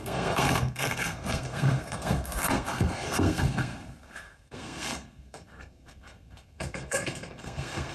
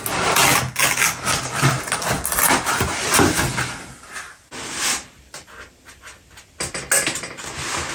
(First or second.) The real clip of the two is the second